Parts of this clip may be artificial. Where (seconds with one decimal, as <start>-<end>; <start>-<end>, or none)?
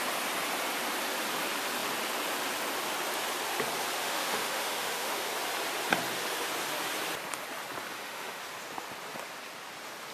4.0-5.3; 7.9-8.4